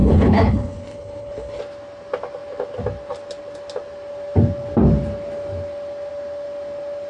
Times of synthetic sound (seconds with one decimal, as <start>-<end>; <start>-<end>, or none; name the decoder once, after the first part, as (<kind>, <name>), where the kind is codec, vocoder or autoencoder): 0.0-1.6 (codec, HILCodec)